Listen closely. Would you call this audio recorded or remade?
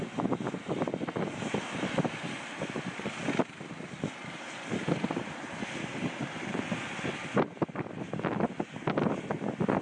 recorded